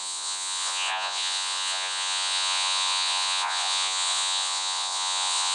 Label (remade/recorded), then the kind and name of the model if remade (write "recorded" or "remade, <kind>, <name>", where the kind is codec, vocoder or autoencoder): remade, vocoder, Vocos